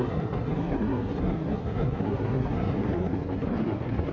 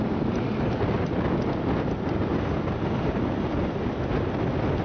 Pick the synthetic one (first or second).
first